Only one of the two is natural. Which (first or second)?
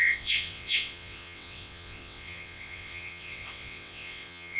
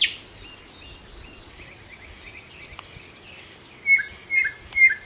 second